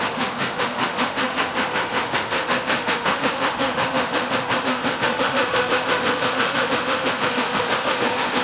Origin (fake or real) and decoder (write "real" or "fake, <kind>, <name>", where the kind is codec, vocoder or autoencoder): fake, autoencoder, DAC-VAE